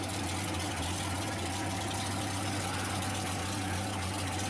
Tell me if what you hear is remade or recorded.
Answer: recorded